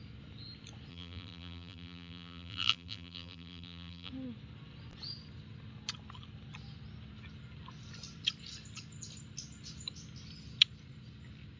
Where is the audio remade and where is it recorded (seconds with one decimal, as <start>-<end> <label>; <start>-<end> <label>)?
0.0-0.9 recorded; 0.9-4.1 remade; 4.1-11.6 recorded